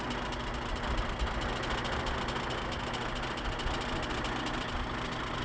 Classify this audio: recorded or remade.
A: recorded